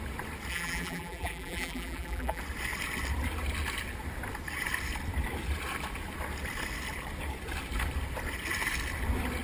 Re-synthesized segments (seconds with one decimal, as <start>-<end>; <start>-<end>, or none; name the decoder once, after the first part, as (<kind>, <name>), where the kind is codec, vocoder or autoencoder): 0.5-2.4 (vocoder, BigVGAN v2)